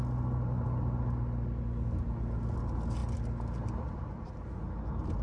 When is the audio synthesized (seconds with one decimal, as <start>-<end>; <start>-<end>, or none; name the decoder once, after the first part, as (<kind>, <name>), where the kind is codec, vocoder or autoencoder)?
none